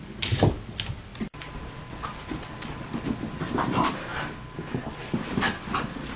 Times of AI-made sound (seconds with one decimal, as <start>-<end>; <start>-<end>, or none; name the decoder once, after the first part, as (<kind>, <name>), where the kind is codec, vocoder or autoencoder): none